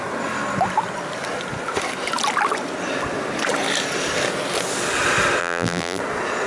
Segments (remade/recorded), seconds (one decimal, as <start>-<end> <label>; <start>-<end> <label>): 0.0-5.4 recorded; 5.4-6.0 remade; 6.0-6.5 recorded